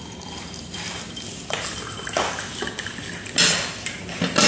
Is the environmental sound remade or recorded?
recorded